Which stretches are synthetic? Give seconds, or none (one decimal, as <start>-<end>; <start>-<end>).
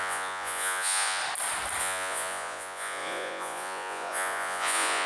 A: 0.0-1.2; 1.8-5.1